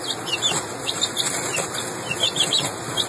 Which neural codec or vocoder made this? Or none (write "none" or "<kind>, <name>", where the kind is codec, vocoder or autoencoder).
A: none